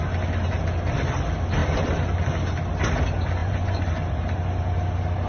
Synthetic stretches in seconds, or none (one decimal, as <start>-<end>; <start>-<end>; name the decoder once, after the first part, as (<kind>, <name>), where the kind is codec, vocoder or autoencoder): 3.4-3.9 (vocoder, Vocos)